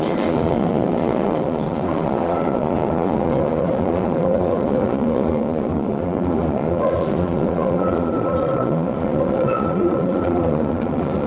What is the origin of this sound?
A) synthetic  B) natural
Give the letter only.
A